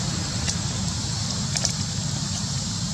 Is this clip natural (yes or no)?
yes